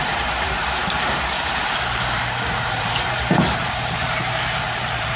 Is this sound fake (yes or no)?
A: yes